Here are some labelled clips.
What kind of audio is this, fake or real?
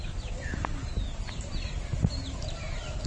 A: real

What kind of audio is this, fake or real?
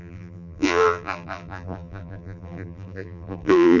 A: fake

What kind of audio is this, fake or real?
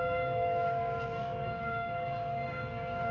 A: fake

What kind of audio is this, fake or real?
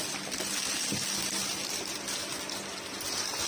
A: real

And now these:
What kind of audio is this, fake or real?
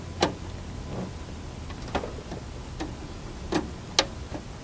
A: real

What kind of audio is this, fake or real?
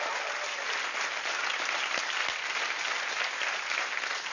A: real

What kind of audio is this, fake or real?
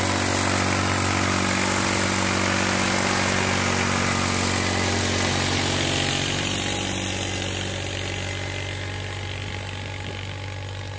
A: real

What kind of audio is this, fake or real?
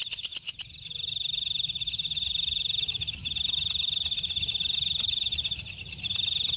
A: fake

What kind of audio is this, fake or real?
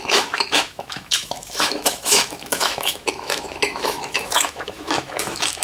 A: fake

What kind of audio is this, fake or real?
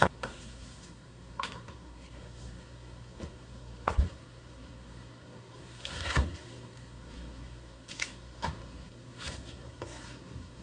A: fake